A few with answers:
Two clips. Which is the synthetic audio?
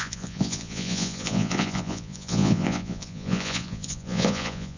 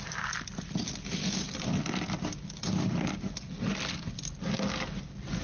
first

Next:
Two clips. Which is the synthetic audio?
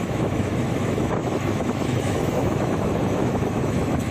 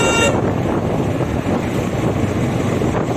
first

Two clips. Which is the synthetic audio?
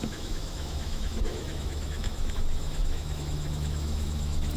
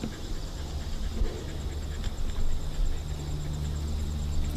first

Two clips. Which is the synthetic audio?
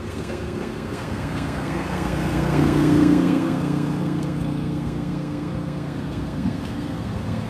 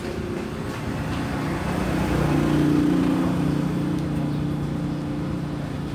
first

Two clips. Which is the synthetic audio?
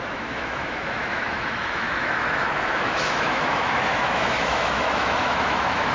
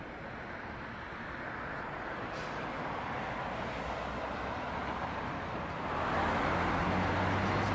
first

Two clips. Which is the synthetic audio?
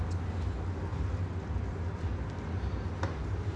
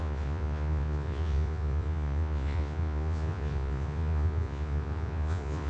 second